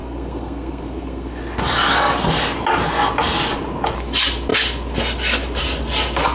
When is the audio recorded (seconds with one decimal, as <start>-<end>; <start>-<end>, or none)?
1.4-6.3